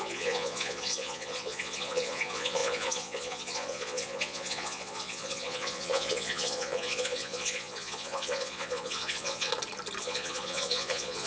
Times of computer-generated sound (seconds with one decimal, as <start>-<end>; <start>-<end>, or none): 0.0-9.5; 10.0-11.3